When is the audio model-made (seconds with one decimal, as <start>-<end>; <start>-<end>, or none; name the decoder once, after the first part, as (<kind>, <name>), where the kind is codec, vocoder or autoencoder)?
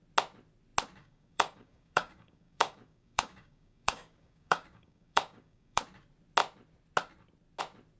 1.0-5.8 (codec, DAC)